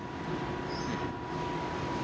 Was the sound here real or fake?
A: real